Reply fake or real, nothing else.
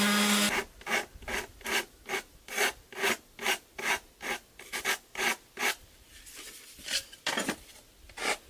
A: real